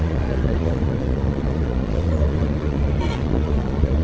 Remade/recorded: remade